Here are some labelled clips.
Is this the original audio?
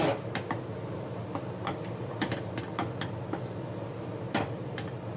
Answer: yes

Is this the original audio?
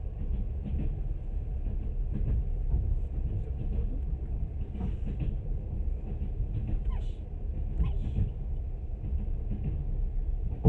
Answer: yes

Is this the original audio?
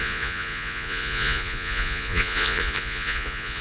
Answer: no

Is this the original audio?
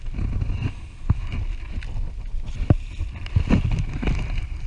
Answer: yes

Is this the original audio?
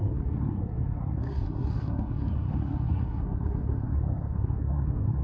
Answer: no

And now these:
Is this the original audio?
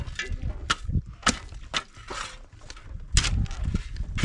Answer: yes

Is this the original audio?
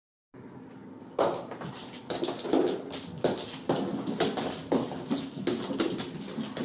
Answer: yes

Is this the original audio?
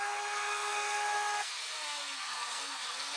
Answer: no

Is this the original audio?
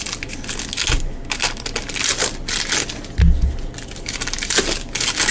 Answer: yes